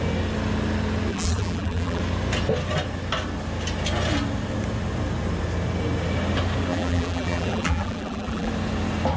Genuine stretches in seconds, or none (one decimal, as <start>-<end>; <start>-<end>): 0.0-1.1; 2.0-6.7; 8.5-9.2